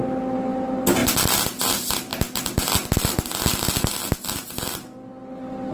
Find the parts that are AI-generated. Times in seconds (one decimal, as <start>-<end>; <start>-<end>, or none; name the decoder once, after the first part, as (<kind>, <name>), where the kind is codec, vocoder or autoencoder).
none